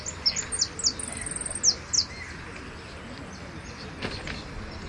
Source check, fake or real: real